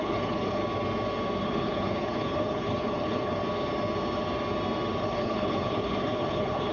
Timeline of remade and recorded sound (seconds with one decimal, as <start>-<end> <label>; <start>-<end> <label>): 0.0-0.6 remade; 0.6-1.4 recorded; 1.4-3.4 remade; 3.4-5.0 recorded; 5.0-6.7 remade